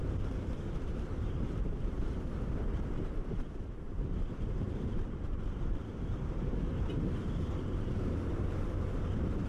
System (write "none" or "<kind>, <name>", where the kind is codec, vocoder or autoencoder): vocoder, BigVGAN v2